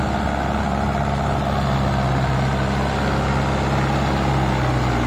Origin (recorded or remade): recorded